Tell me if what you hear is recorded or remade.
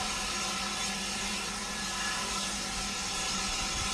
recorded